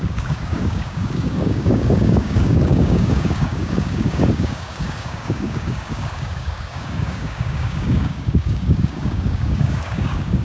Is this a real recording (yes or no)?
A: no